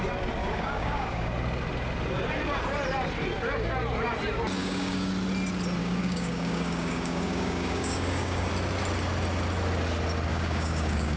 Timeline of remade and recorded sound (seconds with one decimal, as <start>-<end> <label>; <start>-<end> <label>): 0.0-0.4 recorded; 0.4-1.3 remade; 1.3-4.6 recorded; 4.6-5.1 remade; 5.1-5.8 recorded; 5.8-8.5 remade; 8.5-10.3 recorded; 10.3-11.2 remade